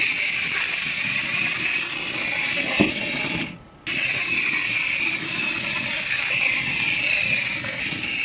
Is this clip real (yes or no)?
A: yes